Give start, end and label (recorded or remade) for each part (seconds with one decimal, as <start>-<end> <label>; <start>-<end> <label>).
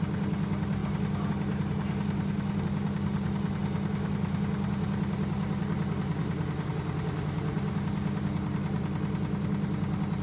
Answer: 0.0-10.2 recorded